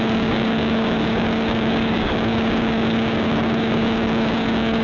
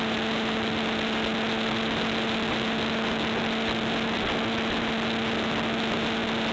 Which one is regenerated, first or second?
first